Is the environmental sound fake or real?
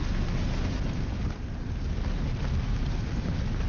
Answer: real